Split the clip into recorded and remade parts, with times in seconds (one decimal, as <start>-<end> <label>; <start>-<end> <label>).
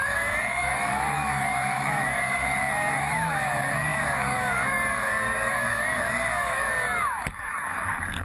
0.0-8.2 remade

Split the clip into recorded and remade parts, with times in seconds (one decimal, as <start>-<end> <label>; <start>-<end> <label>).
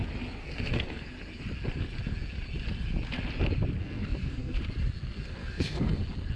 0.0-0.4 recorded; 0.4-1.1 remade; 1.1-3.8 recorded; 3.8-4.6 remade; 4.6-5.4 recorded; 5.4-6.0 remade; 6.0-6.4 recorded